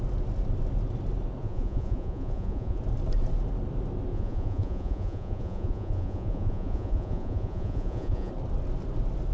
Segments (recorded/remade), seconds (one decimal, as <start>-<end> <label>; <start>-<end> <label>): 0.0-1.4 recorded; 1.4-2.8 remade; 2.8-4.1 recorded; 4.1-8.3 remade; 8.3-9.3 recorded